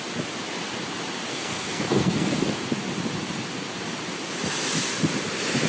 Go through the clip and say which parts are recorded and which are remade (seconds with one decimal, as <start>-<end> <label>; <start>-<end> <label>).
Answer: 0.0-1.3 recorded; 1.3-2.6 remade; 2.6-5.7 recorded